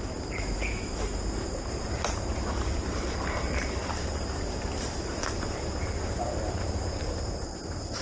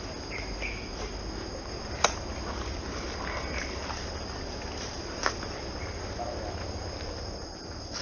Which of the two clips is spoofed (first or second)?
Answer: first